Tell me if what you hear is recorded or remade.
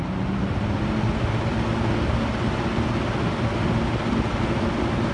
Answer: recorded